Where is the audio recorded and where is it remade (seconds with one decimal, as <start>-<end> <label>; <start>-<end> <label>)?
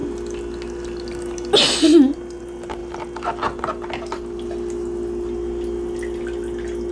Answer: 0.0-6.9 recorded